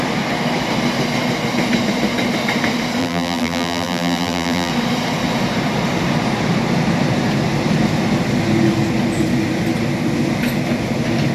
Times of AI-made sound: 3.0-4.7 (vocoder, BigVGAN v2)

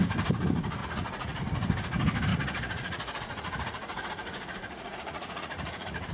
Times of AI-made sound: 0.8-1.4 (vocoder, Vocos); 2.3-6.1

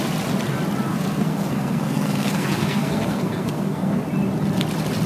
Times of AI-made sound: 0.9-4.0 (codec, SNAC)

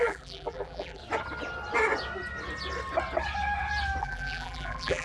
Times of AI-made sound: 0.0-1.0 (vocoder, BigVGAN v2); 4.0-5.0

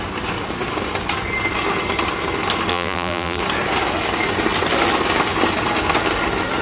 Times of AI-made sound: 2.7-3.4 (vocoder, BigVGAN v2)

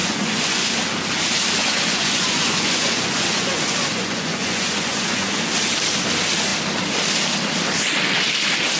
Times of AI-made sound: 0.0-0.7 (vocoder, Vocos); 1.6-5.5

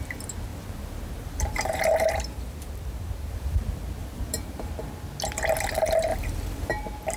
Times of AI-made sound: 0.5-3.6 (vocoder, BigVGAN v2); 4.0-4.7; 6.1-6.7

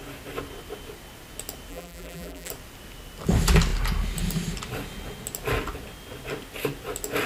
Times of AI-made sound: 1.7-2.5 (vocoder, BigVGAN v2)